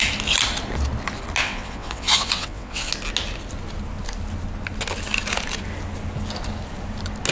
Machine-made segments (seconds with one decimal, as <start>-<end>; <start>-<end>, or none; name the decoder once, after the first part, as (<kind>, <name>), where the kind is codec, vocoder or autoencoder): 1.4-2.9 (vocoder, WaveNeXt)